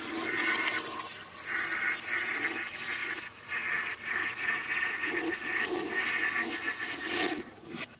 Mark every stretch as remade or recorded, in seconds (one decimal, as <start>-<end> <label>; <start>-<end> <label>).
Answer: 0.0-3.0 recorded; 3.0-3.5 remade; 3.5-4.2 recorded; 4.2-5.7 remade; 5.7-6.7 recorded; 6.7-7.6 remade; 7.6-8.0 recorded